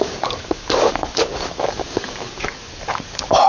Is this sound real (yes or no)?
no